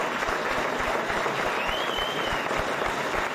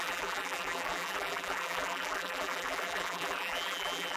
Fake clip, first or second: second